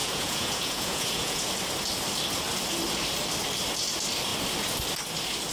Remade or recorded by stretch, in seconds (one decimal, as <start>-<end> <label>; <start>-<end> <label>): 0.0-1.5 remade; 1.5-5.5 recorded